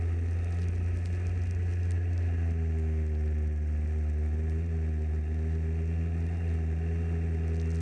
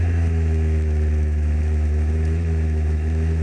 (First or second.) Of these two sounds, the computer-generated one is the second